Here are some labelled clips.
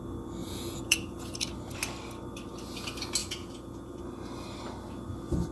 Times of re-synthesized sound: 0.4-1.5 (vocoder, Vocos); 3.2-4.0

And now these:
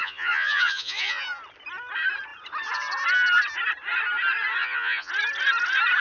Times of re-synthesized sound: 0.0-1.2 (vocoder, Vocos); 4.6-5.1

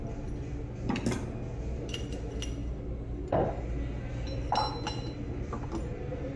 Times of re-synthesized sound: none